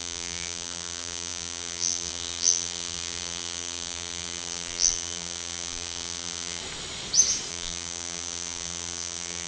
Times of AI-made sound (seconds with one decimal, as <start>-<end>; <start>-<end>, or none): 0.0-6.6; 7.5-9.5